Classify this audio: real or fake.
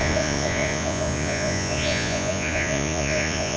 fake